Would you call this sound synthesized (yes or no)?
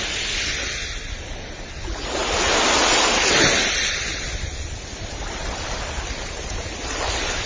no